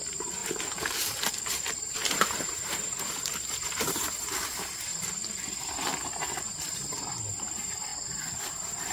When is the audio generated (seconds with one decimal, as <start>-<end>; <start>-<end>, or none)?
0.0-0.4; 1.8-4.9; 5.6-7.9; 8.4-8.9